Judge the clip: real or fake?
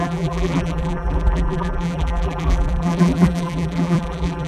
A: fake